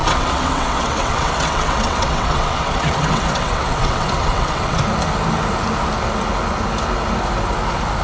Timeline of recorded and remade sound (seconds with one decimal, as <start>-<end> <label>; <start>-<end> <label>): 0.0-4.8 remade; 4.8-8.0 recorded